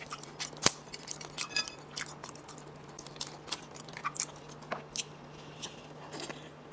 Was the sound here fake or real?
real